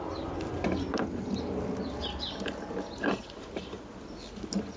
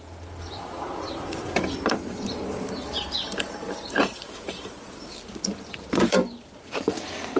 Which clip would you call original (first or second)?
first